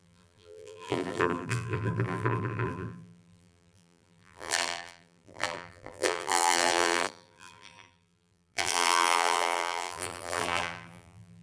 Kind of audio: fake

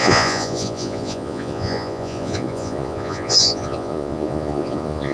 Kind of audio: fake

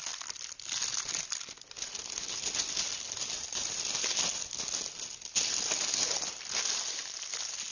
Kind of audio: real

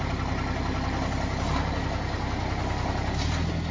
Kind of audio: real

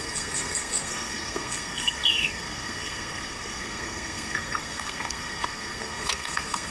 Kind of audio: fake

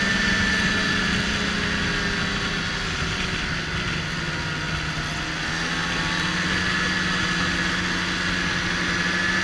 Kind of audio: real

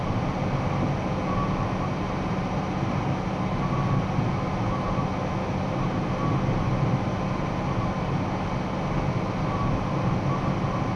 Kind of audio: real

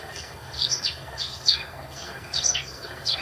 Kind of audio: fake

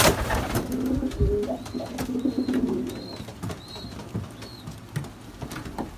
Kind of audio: real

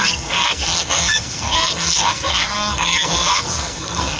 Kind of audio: fake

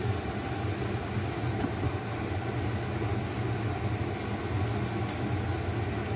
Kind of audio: real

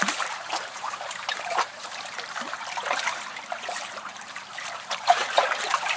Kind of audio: fake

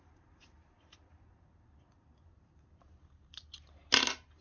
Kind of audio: real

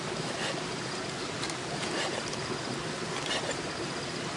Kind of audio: real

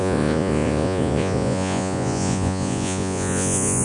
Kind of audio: fake